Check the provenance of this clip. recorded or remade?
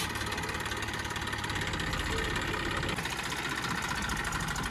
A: recorded